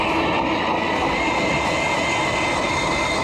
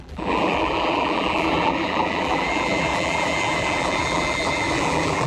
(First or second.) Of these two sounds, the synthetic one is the second